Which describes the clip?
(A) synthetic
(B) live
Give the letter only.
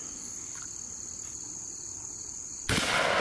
B